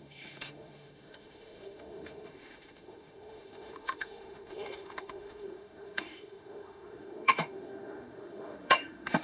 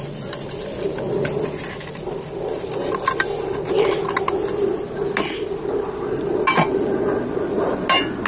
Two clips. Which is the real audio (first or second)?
second